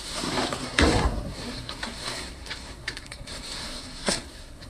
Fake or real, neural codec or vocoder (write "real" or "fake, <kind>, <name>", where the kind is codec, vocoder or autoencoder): fake, codec, SNAC